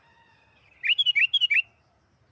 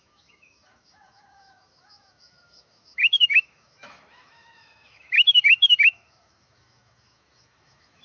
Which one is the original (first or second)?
first